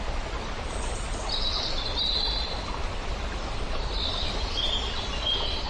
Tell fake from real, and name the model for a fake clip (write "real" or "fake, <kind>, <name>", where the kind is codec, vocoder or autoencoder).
real